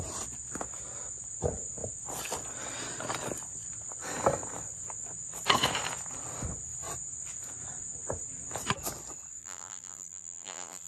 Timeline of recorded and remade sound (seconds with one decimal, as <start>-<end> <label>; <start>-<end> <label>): 0.0-9.4 recorded; 9.4-10.9 remade